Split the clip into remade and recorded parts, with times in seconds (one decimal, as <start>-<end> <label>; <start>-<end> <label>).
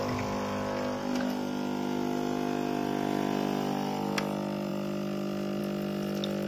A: 0.0-6.5 recorded